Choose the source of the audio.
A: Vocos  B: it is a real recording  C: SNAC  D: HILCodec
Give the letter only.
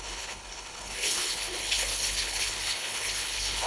D